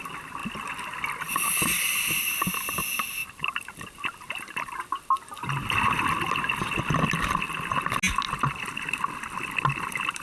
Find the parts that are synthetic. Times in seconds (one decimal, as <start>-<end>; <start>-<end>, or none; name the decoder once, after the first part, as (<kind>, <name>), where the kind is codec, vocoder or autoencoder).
none